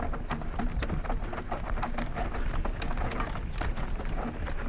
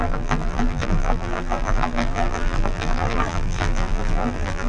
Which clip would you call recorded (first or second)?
first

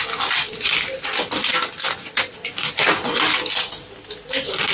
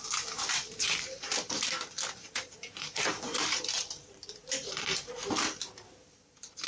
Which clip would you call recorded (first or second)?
first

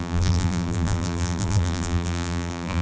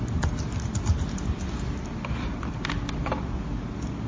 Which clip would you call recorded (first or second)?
second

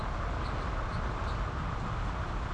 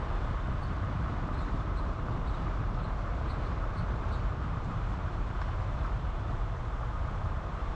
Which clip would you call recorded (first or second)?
first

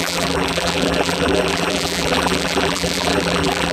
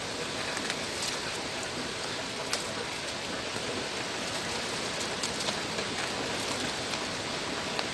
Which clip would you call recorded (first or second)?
second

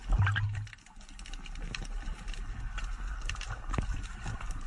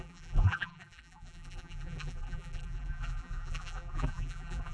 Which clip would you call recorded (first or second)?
first